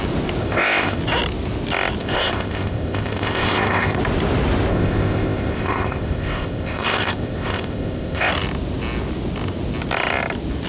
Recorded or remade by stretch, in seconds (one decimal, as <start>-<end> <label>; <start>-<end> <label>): 0.0-0.4 recorded; 0.4-1.0 remade; 1.0-2.0 recorded; 2.0-4.0 remade; 4.0-4.7 recorded; 4.7-8.3 remade; 8.3-10.7 recorded